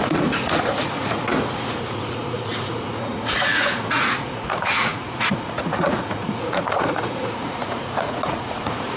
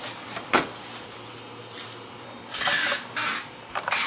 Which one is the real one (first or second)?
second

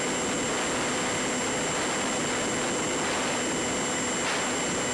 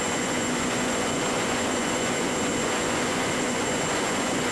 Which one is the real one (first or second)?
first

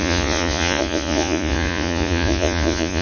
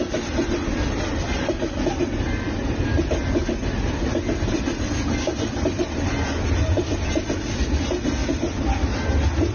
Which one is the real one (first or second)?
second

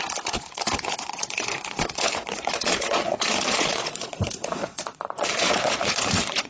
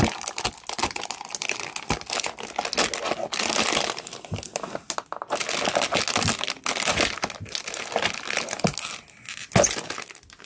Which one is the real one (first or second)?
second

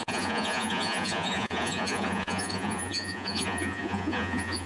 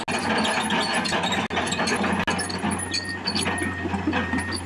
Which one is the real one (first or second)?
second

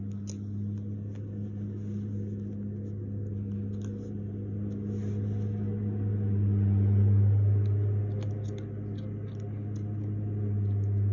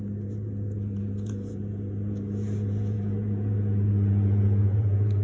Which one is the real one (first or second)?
first